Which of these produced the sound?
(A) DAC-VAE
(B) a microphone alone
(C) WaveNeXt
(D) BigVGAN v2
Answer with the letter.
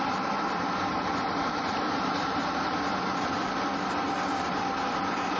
D